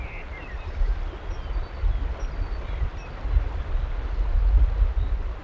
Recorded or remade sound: recorded